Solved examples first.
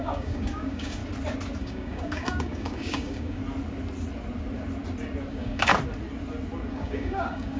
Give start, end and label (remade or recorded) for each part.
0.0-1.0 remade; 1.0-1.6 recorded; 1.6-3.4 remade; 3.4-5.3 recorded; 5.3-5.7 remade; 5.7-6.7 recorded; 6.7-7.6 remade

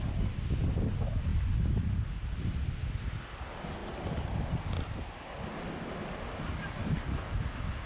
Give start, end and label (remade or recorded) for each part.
0.0-6.8 recorded; 6.8-7.4 remade; 7.4-7.9 recorded

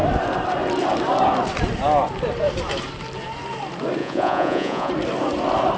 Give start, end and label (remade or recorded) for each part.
0.0-4.0 recorded; 4.0-4.9 remade; 4.9-5.8 recorded